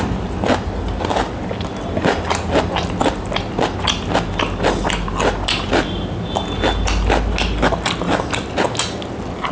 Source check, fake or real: real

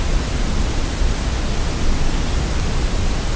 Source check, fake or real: real